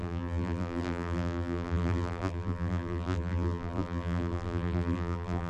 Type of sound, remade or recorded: remade